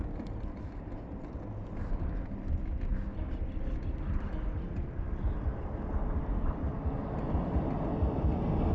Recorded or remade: recorded